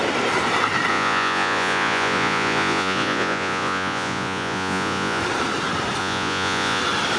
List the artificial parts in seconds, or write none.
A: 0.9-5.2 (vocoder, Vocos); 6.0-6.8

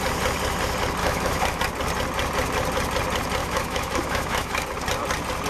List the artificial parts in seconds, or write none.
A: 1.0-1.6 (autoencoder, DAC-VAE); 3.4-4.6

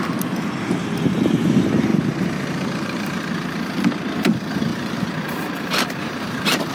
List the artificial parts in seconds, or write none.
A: 1.9-3.1 (vocoder, BigVGAN v2); 4.7-6.7